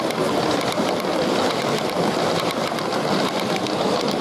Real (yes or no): yes